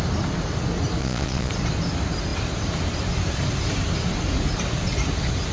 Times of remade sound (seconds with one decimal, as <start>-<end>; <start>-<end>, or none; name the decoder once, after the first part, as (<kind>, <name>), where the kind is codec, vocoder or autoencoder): 1.0-1.5 (vocoder, Vocos)